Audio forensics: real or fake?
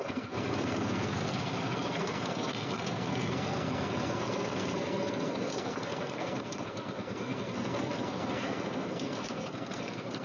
fake